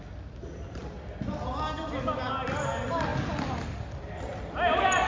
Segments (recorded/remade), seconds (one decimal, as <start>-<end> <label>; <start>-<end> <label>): 0.0-3.1 recorded; 3.1-4.4 remade; 4.4-5.1 recorded